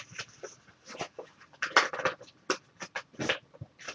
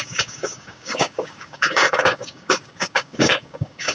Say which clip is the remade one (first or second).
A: second